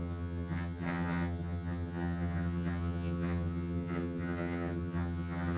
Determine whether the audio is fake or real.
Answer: fake